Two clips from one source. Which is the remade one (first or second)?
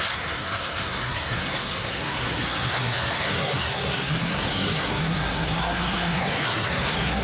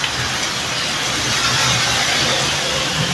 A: first